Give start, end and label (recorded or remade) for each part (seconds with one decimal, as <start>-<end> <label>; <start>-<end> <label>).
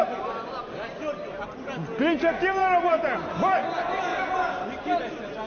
0.0-5.5 recorded